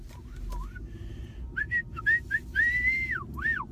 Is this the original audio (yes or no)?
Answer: yes